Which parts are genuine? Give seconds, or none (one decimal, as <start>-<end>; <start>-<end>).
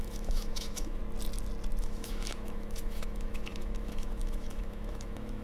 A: 1.0-1.8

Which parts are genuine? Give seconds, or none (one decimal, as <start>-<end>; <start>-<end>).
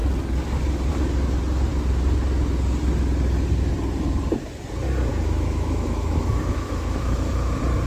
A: 0.0-5.1; 7.3-7.9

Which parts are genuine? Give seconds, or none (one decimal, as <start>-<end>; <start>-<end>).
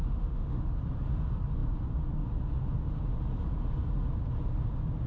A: 0.6-5.1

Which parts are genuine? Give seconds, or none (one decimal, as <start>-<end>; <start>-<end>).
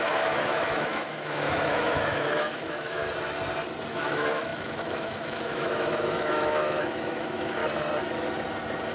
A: 3.0-3.9; 7.6-8.9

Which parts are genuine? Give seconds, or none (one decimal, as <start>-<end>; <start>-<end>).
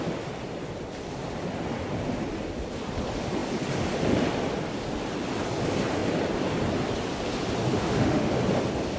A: 0.0-7.7; 8.3-9.0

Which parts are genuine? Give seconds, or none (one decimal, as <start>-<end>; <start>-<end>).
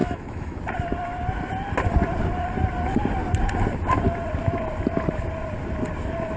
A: 0.6-6.4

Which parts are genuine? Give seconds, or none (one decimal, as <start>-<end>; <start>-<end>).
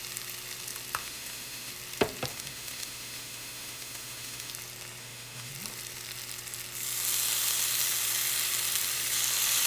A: 0.0-1.0; 1.7-2.3; 4.5-5.0; 5.5-9.7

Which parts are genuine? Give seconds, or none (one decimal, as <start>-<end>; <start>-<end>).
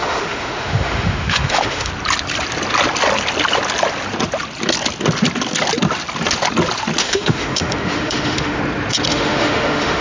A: 1.9-7.0; 8.6-9.1